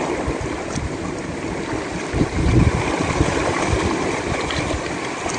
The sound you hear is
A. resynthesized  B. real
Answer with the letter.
B